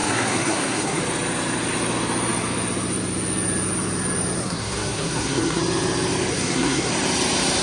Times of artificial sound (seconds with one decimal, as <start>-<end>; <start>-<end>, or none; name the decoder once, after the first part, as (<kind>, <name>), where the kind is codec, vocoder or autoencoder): 0.0-1.0 (codec, SNAC); 4.4-5.6; 6.3-6.9